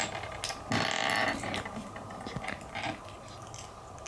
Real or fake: real